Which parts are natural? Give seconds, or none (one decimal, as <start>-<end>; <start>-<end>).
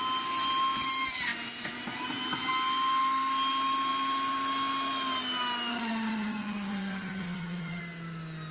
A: 0.0-5.7; 7.8-8.5